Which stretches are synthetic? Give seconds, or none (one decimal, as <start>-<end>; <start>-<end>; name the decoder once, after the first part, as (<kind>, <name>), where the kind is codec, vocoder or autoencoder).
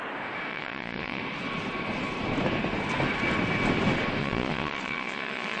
0.5-1.2 (vocoder, Vocos); 4.2-5.6